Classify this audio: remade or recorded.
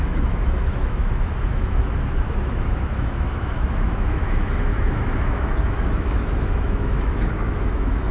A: remade